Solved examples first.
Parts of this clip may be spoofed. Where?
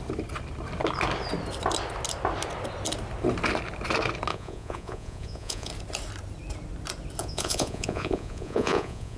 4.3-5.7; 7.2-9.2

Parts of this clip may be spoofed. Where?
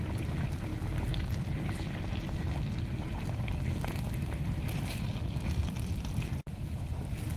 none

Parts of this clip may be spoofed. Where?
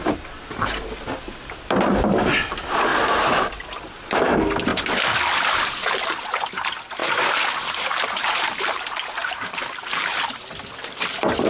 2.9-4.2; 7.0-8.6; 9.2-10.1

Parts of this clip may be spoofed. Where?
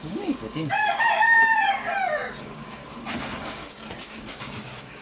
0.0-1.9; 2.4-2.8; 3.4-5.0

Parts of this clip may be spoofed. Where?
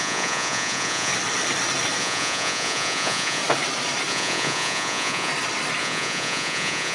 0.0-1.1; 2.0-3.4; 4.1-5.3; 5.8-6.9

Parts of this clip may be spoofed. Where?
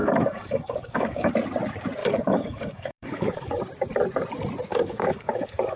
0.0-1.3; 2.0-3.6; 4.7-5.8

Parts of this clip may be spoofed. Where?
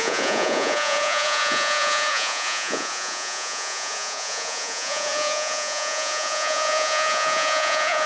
0.0-8.1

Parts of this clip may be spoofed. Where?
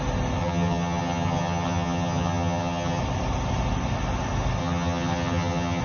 0.4-3.0; 4.6-5.8